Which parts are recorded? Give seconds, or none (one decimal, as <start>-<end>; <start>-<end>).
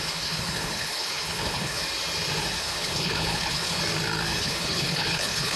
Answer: 1.8-2.6; 3.8-4.4